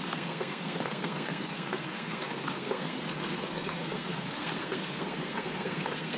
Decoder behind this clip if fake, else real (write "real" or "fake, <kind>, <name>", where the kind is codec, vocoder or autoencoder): fake, codec, SNAC